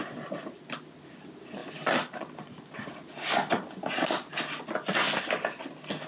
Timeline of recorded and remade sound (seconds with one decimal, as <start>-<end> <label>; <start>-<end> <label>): 0.0-6.1 recorded